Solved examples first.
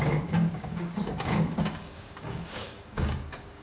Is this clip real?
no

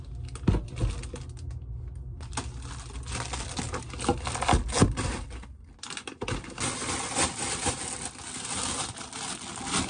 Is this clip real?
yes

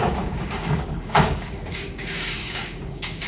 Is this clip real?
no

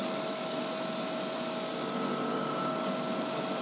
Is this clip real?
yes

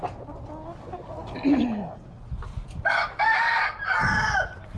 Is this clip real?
yes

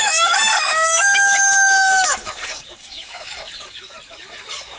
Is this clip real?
no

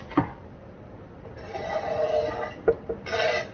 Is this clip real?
yes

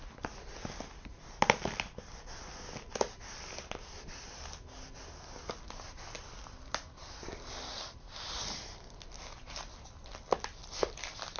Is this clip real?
yes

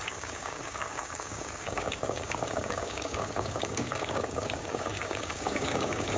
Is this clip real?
no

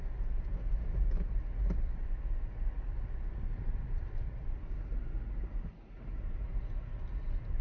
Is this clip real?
yes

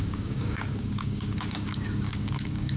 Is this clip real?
no